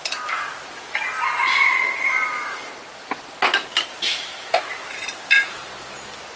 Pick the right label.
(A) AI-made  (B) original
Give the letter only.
B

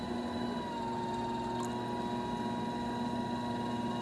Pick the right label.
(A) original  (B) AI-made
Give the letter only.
A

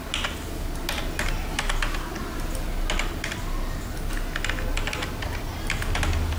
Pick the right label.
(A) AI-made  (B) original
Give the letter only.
B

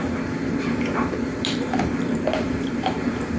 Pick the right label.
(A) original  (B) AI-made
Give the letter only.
B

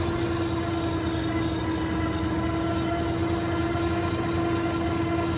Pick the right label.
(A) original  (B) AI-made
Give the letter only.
A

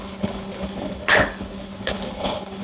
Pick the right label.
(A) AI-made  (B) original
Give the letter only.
A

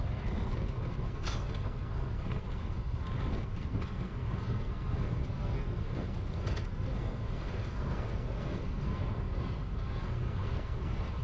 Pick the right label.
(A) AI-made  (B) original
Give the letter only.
A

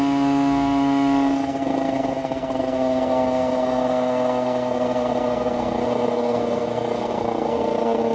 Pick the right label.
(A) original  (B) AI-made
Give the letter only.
B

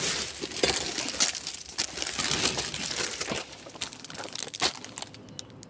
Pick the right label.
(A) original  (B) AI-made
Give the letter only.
A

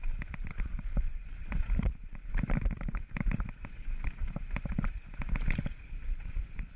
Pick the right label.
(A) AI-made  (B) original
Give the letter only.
A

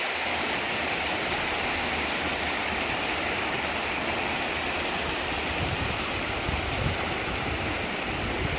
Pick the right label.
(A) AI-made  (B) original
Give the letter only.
B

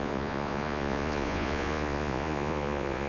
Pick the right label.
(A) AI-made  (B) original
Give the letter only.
A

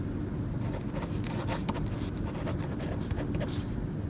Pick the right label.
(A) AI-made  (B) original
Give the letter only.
B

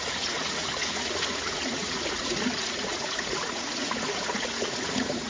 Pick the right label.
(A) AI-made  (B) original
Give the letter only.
A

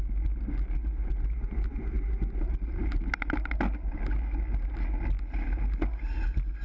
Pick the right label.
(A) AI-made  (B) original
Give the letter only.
B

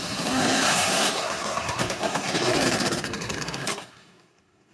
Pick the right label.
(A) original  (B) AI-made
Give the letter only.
B